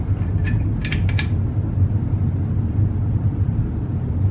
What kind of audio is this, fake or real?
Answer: real